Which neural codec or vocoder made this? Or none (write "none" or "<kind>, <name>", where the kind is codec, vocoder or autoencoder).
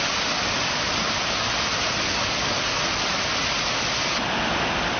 none